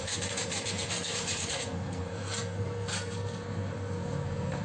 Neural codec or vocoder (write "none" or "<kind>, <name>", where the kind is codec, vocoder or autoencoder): codec, SNAC